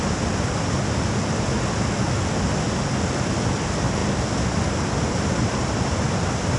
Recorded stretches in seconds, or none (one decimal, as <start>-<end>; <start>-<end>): 0.0-6.6

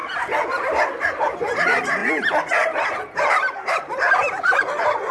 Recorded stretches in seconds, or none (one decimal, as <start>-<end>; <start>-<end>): 0.0-5.1

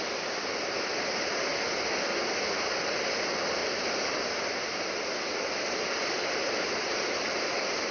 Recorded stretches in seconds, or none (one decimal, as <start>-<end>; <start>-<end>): 0.0-7.9